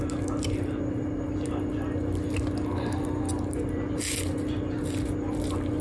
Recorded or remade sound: recorded